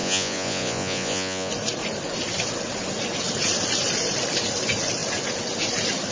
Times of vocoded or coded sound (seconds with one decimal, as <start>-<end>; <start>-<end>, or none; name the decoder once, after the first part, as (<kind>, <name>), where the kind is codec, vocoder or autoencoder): 0.0-1.5 (vocoder, Vocos)